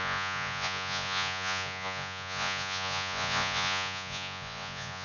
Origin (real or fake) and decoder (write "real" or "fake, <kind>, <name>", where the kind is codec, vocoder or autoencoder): fake, vocoder, Vocos